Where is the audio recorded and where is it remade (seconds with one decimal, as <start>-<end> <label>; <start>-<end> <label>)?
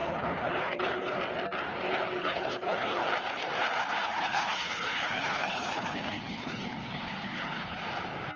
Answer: 0.0-1.2 remade; 1.2-2.2 recorded; 2.2-3.1 remade; 3.1-4.0 recorded; 4.0-7.8 remade; 7.8-8.4 recorded